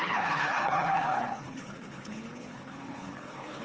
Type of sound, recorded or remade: remade